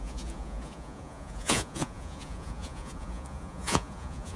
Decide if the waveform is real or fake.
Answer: fake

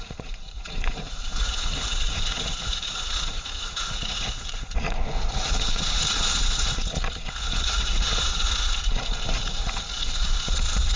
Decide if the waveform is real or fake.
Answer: fake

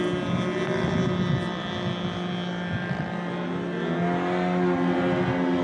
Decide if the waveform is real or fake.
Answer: real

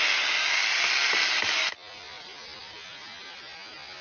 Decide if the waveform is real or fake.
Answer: real